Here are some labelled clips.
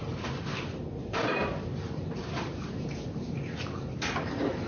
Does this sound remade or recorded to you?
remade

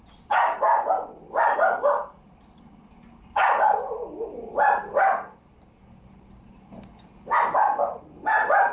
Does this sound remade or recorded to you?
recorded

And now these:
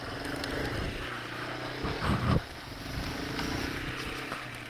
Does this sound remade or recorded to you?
recorded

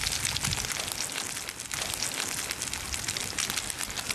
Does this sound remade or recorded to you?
recorded